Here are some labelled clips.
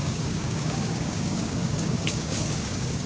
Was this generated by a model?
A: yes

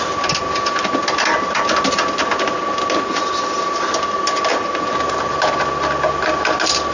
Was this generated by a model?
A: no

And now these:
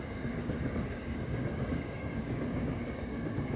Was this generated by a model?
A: yes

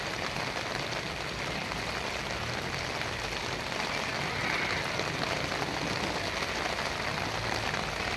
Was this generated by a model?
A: no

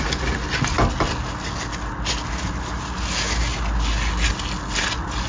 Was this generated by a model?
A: no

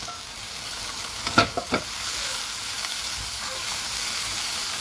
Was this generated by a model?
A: yes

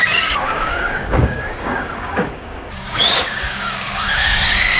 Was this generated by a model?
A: yes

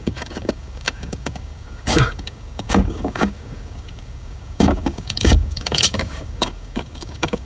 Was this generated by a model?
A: yes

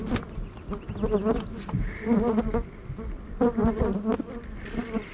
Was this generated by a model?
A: no